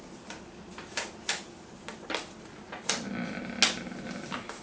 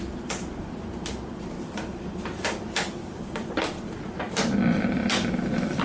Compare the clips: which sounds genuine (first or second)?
first